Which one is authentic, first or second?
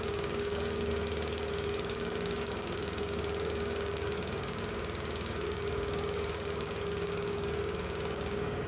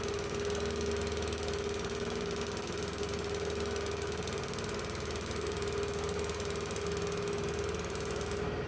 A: second